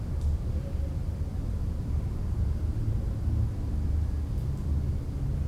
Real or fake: real